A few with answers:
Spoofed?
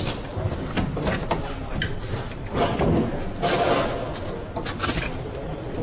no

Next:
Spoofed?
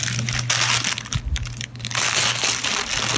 no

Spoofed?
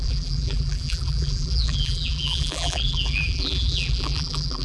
yes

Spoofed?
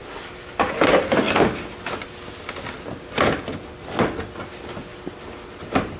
no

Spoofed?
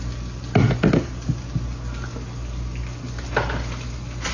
no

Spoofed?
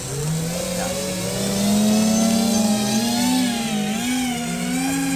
no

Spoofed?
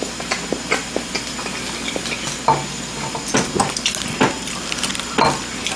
no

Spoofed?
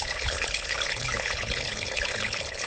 yes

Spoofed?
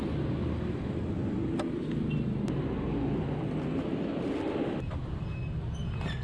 no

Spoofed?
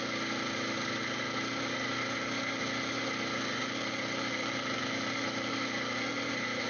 no